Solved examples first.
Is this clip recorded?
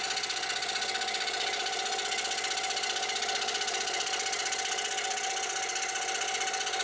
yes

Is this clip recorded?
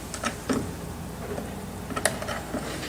yes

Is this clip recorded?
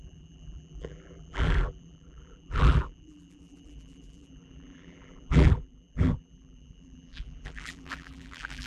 no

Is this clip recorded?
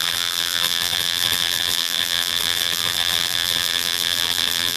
no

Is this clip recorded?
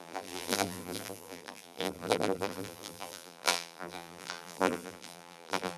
no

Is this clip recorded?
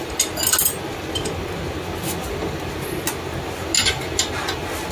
yes